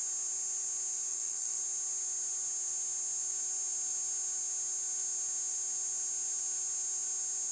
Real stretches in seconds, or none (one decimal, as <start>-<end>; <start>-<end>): 0.0-1.1; 1.6-7.5